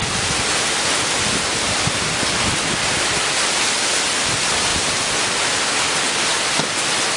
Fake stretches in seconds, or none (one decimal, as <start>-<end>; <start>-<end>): 0.0-2.4

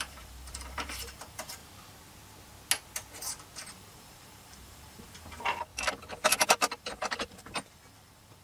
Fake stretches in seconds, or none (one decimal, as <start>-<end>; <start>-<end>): 0.0-1.6; 3.7-5.7; 6.5-8.4

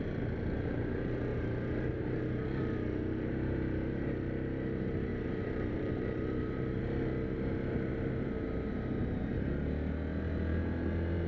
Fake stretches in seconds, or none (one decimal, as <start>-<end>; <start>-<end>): 1.3-4.3; 5.1-6.8

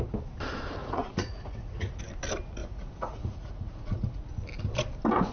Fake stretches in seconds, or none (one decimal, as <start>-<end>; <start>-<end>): 0.8-2.0; 2.6-4.2

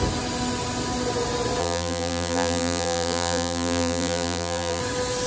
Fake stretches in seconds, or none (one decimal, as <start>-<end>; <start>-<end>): 1.6-4.8

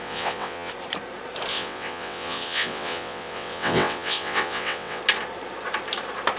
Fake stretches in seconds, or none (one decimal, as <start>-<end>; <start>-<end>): 0.0-0.7; 1.5-5.0

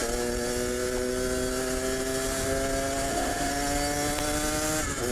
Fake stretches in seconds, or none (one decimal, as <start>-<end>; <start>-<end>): 3.1-3.5

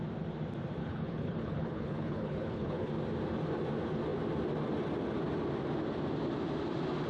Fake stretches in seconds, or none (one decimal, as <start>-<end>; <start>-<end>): 0.8-2.9